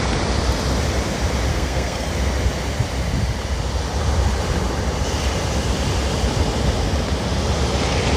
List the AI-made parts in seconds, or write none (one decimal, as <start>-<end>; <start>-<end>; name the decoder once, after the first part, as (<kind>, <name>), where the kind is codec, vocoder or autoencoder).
1.5-2.1 (codec, SNAC)